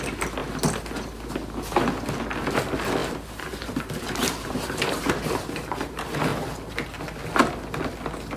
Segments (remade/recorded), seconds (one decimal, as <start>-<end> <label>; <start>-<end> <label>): 0.0-3.0 recorded; 3.0-5.1 remade; 5.1-8.4 recorded